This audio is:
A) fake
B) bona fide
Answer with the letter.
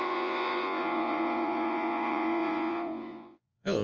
A